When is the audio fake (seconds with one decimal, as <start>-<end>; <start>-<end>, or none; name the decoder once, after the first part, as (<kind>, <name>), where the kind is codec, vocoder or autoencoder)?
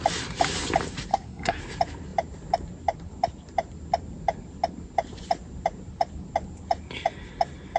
1.1-1.6 (codec, SNAC)